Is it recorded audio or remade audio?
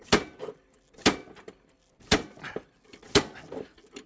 recorded